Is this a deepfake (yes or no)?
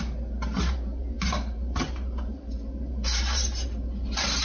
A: yes